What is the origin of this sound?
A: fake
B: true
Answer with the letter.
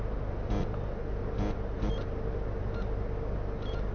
B